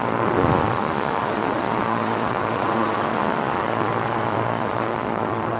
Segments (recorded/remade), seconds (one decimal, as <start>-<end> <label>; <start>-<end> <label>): 0.0-5.6 remade